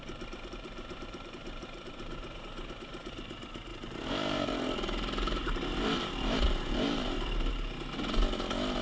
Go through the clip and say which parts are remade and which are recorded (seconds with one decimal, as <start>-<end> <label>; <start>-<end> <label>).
0.0-0.9 recorded; 0.9-3.3 remade; 3.3-3.7 recorded; 3.7-7.5 remade; 7.5-8.8 recorded